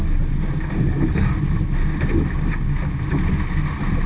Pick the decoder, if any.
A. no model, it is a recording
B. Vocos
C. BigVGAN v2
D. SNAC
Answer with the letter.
A